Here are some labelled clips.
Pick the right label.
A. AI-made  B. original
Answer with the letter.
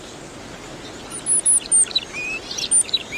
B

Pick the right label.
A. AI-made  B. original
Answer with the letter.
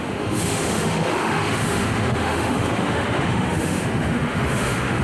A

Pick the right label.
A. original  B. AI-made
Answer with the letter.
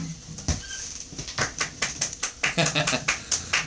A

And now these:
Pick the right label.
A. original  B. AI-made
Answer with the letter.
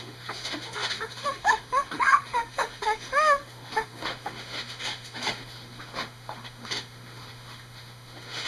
B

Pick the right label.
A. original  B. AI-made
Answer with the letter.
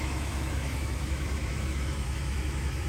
B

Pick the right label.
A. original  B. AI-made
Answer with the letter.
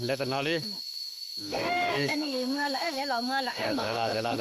B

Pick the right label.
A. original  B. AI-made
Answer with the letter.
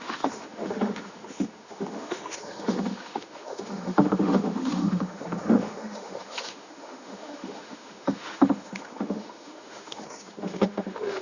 B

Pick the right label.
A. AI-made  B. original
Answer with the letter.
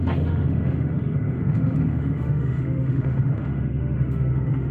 A